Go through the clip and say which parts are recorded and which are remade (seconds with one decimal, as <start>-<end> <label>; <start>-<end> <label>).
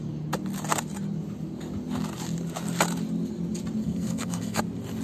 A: 0.0-3.8 recorded; 3.8-4.6 remade; 4.6-5.0 recorded